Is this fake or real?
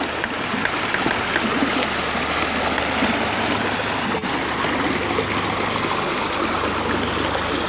real